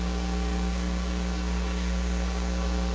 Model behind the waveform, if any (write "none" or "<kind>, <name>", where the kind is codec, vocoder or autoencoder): codec, SNAC